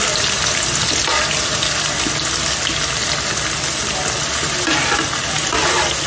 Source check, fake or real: real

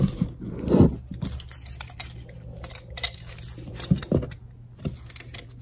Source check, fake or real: real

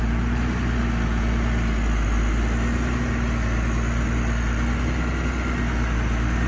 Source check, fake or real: real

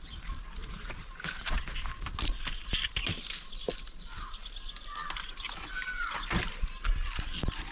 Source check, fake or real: real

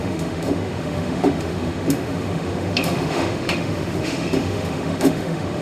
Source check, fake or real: fake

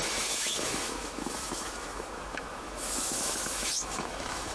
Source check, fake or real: fake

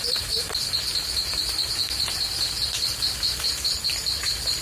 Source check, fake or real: real